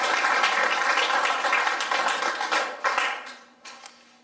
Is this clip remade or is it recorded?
recorded